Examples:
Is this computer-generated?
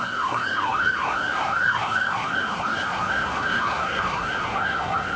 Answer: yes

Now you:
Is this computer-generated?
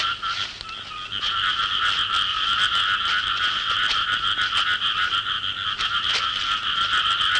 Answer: no